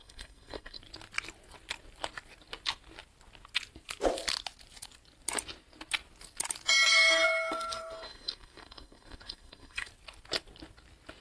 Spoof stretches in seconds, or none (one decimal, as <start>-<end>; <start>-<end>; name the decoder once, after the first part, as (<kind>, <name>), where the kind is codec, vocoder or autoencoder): 0.0-0.8 (codec, SNAC); 6.9-9.9